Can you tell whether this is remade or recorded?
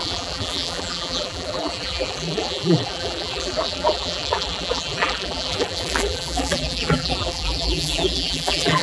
remade